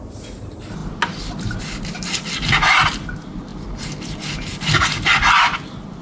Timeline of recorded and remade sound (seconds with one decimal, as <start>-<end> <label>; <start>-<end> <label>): 0.0-6.0 recorded